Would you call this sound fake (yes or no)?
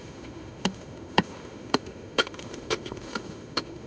yes